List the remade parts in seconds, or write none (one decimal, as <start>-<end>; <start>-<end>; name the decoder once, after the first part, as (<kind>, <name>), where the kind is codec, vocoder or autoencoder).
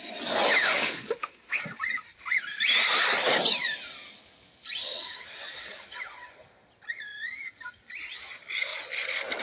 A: 0.6-1.6 (autoencoder, DAC-VAE)